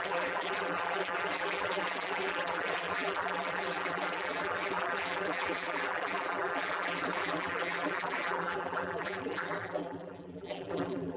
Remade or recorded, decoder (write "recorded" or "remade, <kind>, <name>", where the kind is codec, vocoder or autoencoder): remade, vocoder, BigVGAN v2